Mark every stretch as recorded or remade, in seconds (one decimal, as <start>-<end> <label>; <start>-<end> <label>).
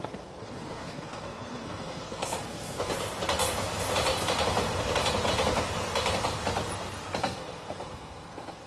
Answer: 0.0-2.9 remade; 2.9-7.2 recorded; 7.2-8.7 remade